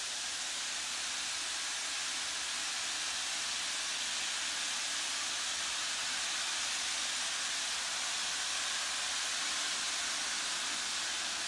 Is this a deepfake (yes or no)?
no